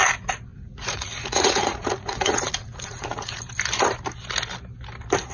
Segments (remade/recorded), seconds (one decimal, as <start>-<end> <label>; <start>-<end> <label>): 0.0-0.5 recorded; 0.5-3.4 remade; 3.4-5.3 recorded